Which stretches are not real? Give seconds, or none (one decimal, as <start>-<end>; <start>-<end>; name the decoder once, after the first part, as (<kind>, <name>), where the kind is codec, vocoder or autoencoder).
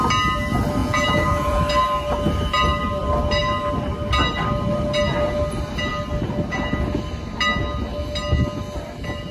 0.8-1.6 (vocoder, Vocos)